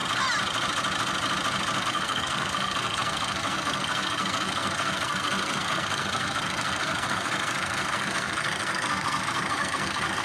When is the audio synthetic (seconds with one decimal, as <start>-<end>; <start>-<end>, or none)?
1.8-10.2